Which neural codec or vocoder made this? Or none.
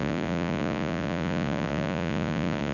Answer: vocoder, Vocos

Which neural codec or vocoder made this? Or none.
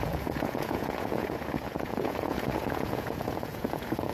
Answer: vocoder, Vocos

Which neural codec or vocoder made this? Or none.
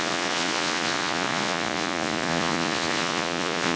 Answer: vocoder, Vocos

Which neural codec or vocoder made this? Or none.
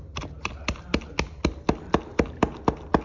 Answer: none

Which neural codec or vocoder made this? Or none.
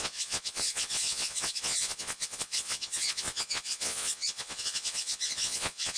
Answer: vocoder, Vocos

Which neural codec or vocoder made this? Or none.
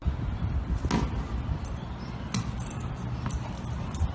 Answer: none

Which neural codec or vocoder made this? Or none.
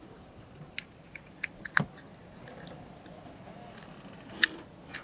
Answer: none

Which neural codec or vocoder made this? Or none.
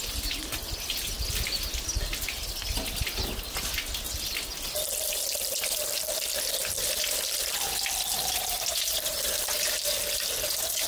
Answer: none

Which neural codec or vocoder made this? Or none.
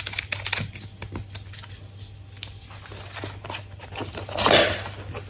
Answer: none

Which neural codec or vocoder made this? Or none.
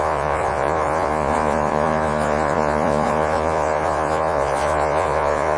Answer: vocoder, Vocos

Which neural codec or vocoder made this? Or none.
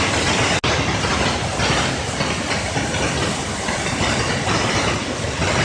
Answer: none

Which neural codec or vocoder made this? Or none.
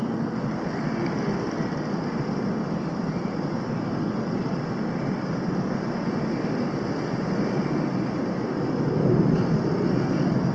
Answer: none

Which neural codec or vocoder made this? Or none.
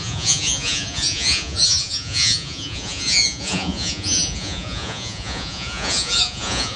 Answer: vocoder, Vocos